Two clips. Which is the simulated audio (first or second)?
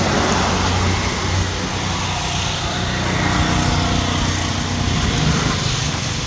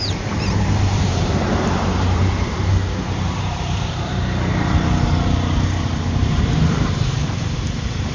second